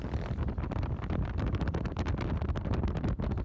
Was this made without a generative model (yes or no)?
yes